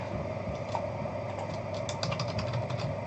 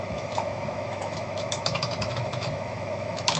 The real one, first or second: first